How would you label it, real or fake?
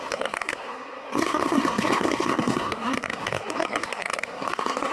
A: fake